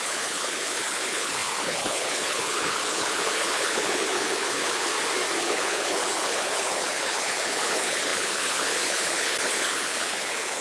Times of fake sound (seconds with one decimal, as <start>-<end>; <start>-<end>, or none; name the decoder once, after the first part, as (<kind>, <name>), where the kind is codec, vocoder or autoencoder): 0.0-4.9 (codec, HILCodec); 5.4-10.6